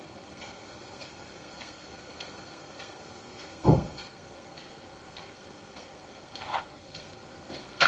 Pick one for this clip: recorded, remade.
remade